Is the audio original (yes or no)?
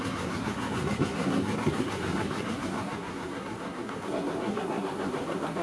no